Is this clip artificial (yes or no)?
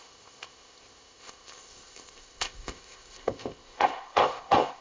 yes